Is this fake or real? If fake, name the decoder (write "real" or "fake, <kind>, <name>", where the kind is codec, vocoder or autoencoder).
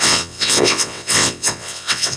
fake, vocoder, WaveNeXt